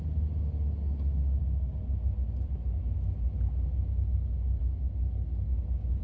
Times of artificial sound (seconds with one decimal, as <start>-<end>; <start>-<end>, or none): none